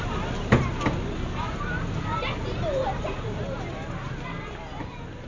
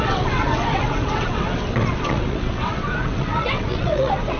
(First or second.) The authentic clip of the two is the first